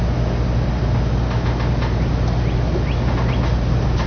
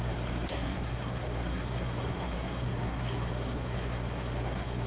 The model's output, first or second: second